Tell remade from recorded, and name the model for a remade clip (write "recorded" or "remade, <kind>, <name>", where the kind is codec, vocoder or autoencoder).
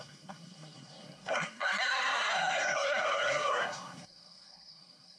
remade, codec, SNAC